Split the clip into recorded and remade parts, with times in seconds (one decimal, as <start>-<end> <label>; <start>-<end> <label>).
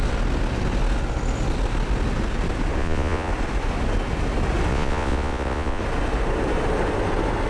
0.0-2.8 recorded; 2.8-3.3 remade; 3.3-4.7 recorded; 4.7-5.8 remade; 5.8-7.5 recorded